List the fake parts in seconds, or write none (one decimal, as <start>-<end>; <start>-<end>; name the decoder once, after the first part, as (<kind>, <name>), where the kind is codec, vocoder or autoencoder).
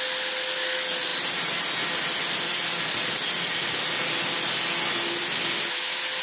none